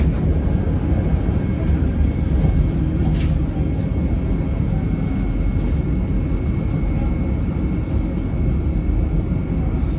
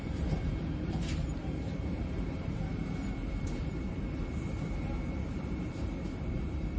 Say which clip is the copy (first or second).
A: second